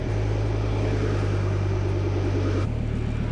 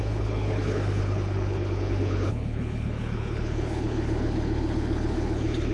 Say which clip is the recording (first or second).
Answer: first